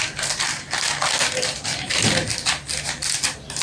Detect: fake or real real